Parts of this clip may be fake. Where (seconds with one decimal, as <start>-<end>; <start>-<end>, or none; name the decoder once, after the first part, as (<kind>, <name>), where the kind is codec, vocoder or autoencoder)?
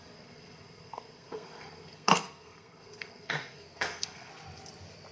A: 0.0-4.3 (codec, SNAC)